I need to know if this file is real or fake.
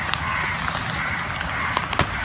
real